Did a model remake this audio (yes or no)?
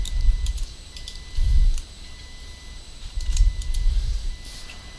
yes